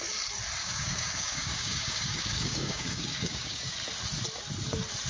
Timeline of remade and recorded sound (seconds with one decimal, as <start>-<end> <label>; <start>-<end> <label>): 0.0-0.6 recorded; 0.6-3.7 remade; 3.7-5.1 recorded